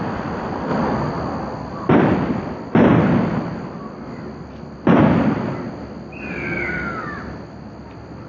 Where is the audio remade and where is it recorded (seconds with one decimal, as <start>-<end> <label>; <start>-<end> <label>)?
0.0-8.3 remade